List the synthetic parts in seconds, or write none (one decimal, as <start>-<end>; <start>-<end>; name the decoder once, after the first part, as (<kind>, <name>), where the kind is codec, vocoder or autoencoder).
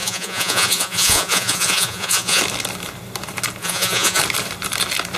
0.0-2.4 (vocoder, Vocos); 3.6-4.2